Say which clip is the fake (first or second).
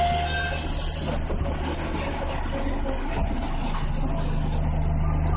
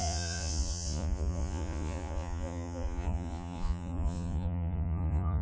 second